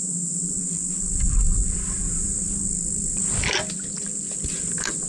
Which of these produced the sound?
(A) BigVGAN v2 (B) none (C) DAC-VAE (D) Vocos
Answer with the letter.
A